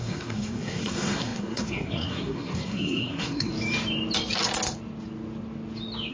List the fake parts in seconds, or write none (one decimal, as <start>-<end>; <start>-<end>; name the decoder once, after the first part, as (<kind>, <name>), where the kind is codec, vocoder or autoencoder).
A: 0.0-3.5 (codec, SNAC)